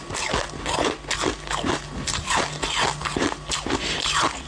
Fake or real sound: real